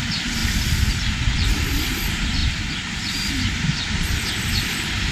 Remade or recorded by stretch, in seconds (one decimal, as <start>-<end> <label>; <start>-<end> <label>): 0.0-0.4 remade; 0.4-1.0 recorded; 1.0-2.4 remade; 2.4-3.3 recorded; 3.3-5.1 remade